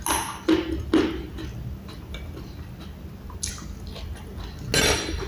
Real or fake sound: real